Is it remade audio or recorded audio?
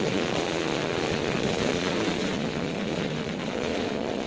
remade